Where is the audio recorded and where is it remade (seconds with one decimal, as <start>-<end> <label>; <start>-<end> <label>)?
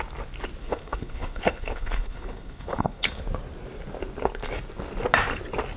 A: 0.0-0.6 recorded; 0.6-3.2 remade; 3.2-5.8 recorded